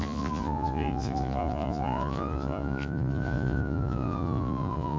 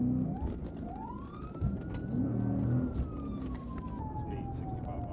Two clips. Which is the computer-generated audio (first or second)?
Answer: first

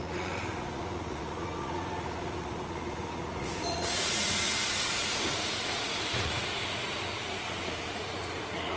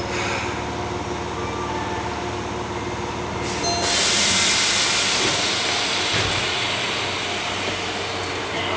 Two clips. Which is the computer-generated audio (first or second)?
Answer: first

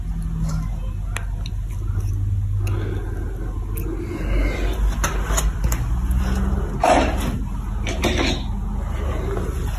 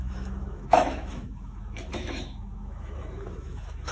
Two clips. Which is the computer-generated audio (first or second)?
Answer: second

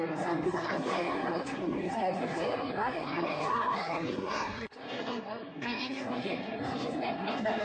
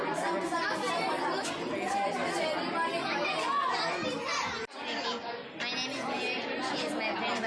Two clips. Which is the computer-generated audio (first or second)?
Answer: first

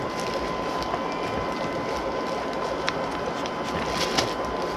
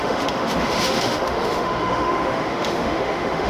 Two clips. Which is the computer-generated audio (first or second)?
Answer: second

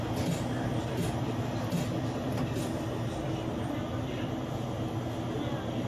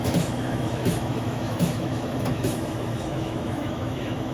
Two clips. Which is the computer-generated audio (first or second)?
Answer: second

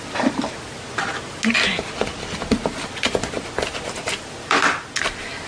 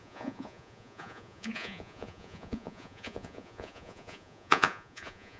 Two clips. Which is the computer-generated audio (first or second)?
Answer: second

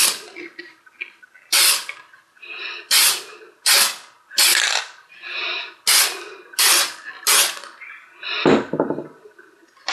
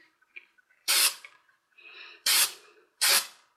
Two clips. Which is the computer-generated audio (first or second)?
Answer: second